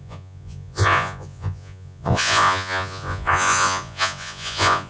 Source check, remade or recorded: remade